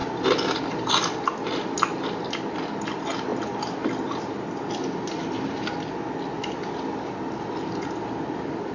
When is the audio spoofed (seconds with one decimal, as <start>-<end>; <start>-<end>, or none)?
none